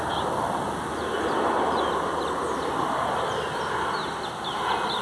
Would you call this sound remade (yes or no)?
no